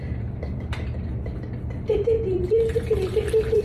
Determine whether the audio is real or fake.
fake